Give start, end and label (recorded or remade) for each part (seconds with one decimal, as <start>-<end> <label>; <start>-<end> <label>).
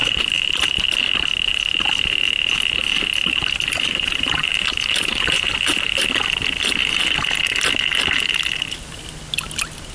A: 0.0-0.8 remade; 0.8-1.5 recorded; 1.5-6.2 remade; 6.2-9.9 recorded